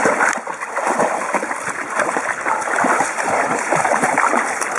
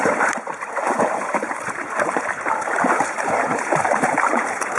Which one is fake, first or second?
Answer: second